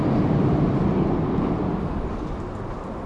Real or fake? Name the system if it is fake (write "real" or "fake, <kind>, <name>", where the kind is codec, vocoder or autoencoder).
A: real